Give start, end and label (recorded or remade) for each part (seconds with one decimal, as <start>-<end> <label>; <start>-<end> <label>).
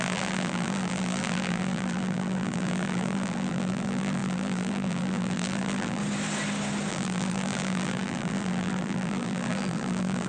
0.0-6.0 remade; 6.0-6.9 recorded; 6.9-10.3 remade